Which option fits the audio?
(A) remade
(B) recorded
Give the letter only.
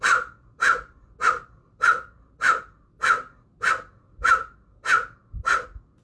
B